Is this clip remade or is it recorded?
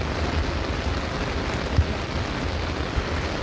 recorded